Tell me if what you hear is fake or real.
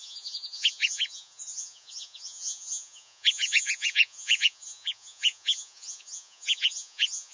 fake